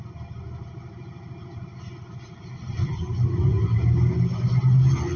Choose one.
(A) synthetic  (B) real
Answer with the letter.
B